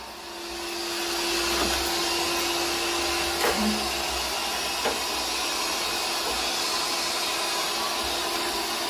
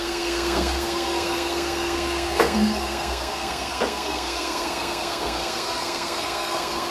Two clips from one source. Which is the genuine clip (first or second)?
first